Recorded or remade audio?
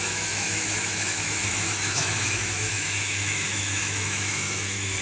remade